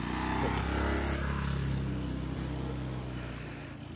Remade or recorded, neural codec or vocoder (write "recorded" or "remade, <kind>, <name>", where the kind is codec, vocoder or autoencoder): recorded